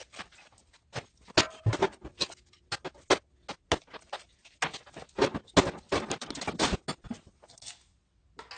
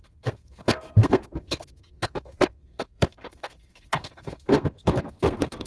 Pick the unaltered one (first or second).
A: first